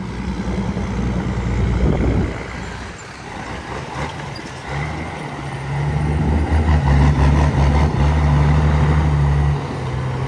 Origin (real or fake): real